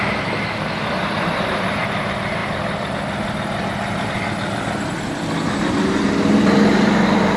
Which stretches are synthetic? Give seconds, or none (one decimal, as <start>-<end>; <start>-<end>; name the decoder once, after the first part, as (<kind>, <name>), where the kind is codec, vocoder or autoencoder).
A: 1.0-1.8 (vocoder, BigVGAN v2)

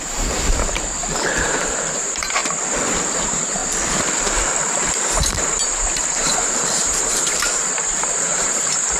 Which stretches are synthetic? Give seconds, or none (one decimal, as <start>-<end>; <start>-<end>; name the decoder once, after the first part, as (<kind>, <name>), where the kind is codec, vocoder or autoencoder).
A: 0.0-2.4 (vocoder, BigVGAN v2); 3.0-3.6; 4.9-9.0

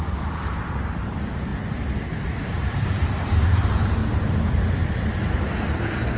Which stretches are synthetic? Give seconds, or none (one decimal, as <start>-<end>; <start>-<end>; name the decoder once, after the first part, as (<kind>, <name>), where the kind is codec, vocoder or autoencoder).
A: 0.0-1.5 (vocoder, BigVGAN v2); 2.2-4.0; 5.4-6.2

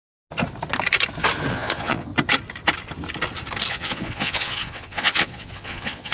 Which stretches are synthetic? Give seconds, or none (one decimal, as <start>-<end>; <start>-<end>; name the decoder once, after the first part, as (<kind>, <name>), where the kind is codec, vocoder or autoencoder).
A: 1.5-2.1 (vocoder, Vocos); 3.7-6.1

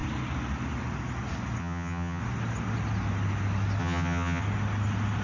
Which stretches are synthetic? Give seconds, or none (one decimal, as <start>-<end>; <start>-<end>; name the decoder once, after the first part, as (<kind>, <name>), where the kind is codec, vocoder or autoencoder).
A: 1.6-2.2 (vocoder, HiFi-GAN); 3.8-4.4